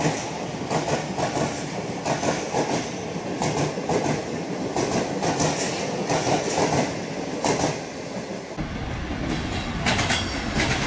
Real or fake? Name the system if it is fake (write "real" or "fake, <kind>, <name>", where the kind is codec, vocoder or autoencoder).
real